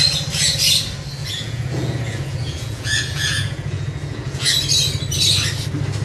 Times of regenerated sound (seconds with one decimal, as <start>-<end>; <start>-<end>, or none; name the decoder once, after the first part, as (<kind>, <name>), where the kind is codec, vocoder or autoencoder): 1.2-4.5 (vocoder, Vocos)